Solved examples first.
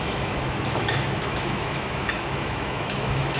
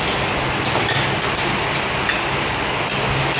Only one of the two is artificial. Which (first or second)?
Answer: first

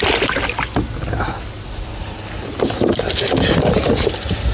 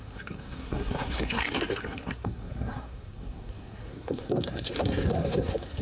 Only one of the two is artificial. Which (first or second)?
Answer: second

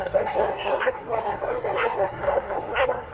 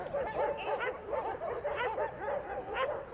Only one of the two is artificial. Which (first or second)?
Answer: first